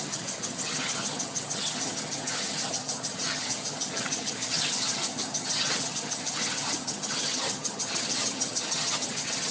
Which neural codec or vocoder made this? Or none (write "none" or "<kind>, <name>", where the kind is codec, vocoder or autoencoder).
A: vocoder, HiFi-GAN